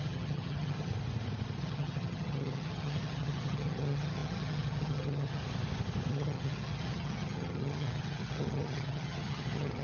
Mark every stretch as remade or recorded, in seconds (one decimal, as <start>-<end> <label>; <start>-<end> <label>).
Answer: 0.0-0.9 remade; 0.9-1.6 recorded; 1.6-5.4 remade; 5.4-6.1 recorded; 6.1-9.8 remade

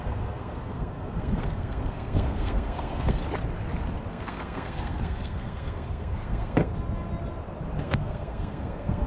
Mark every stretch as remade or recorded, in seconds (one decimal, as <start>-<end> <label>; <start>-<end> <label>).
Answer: 0.0-3.2 remade; 3.2-4.1 recorded; 4.1-6.7 remade; 6.7-7.8 recorded; 7.8-9.1 remade

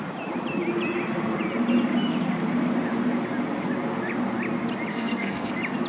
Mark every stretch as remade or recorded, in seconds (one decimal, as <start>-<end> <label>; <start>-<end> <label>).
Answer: 0.0-4.9 recorded; 4.9-5.5 remade; 5.5-5.9 recorded

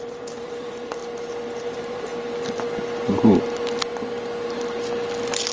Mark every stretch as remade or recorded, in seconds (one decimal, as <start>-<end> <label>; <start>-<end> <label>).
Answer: 0.0-1.0 remade; 1.0-1.6 recorded; 1.6-2.1 remade; 2.1-5.5 recorded

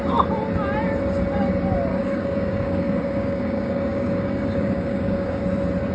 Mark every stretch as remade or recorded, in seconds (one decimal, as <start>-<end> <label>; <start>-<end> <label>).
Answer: 0.0-1.9 recorded; 1.9-5.4 remade; 5.4-5.9 recorded

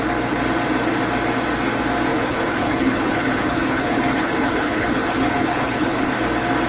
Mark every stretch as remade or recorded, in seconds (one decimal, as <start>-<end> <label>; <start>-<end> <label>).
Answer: 0.0-2.1 recorded; 2.1-6.1 remade; 6.1-6.7 recorded

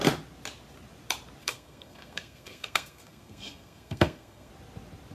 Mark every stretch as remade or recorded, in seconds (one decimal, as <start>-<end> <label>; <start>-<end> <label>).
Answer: 0.0-1.4 recorded; 1.4-4.5 remade; 4.5-5.1 recorded

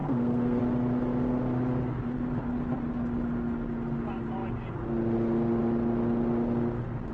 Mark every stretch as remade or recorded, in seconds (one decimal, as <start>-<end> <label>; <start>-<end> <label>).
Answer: 0.0-0.6 remade; 0.6-7.1 recorded